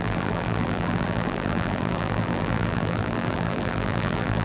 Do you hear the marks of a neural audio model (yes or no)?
yes